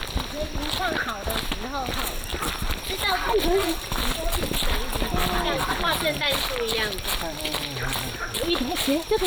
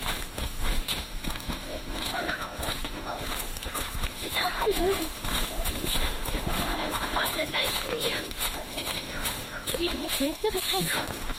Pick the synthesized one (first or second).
second